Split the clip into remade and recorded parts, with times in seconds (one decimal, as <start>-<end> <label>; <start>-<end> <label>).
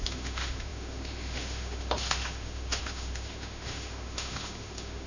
0.0-5.1 remade